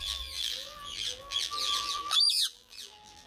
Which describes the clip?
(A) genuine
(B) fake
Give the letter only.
B